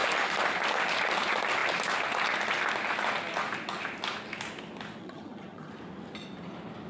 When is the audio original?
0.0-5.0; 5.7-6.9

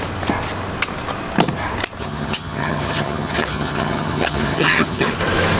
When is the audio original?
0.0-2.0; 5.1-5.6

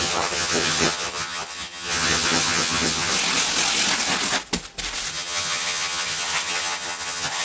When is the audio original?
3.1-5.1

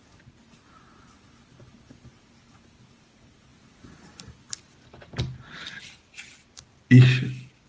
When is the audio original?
0.0-7.7

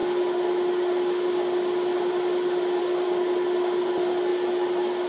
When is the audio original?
0.0-5.1

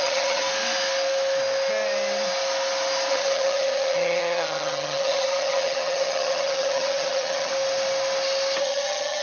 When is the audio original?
0.4-3.1; 7.5-8.6

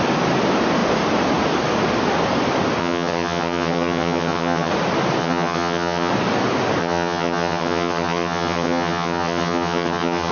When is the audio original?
0.0-2.8; 4.7-5.2; 6.1-6.8